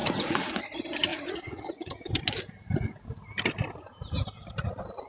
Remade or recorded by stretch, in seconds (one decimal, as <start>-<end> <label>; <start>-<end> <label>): 0.0-0.6 remade; 0.6-1.1 recorded; 1.1-2.1 remade; 2.1-5.1 recorded